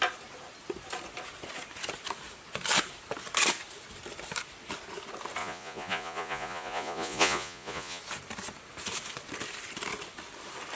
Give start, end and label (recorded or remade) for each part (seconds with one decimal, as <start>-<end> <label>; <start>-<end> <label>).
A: 0.0-5.4 recorded; 5.4-8.0 remade; 8.0-10.8 recorded